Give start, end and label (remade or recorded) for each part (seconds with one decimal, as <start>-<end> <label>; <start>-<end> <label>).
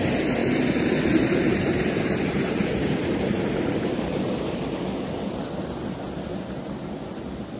0.0-0.4 recorded; 0.4-0.9 remade; 0.9-1.5 recorded; 1.5-4.0 remade; 4.0-6.3 recorded; 6.3-7.0 remade; 7.0-7.6 recorded